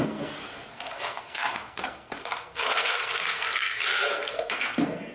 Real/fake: fake